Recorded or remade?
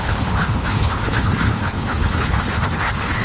remade